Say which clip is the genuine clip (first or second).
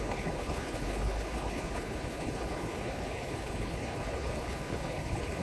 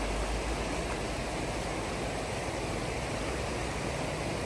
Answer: second